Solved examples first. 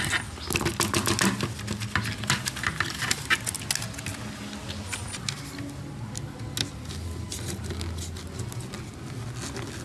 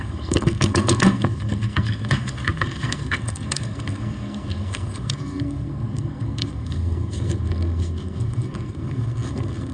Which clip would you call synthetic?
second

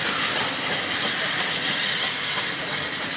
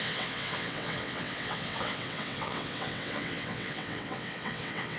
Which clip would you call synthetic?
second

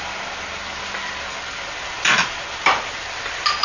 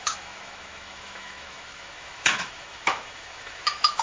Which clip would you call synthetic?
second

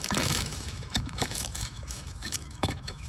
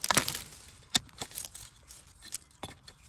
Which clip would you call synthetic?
first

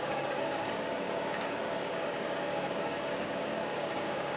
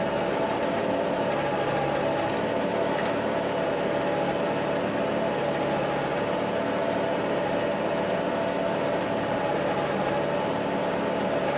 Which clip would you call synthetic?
first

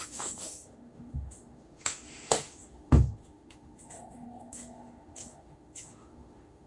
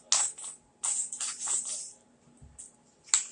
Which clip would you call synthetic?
first